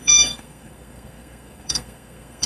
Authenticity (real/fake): fake